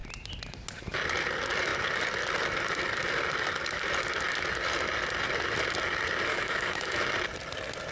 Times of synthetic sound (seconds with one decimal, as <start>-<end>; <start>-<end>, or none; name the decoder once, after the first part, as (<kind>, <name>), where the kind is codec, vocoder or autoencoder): 6.3-7.0 (autoencoder, DAC-VAE)